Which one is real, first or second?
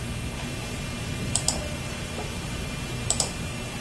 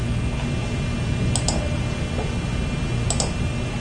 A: second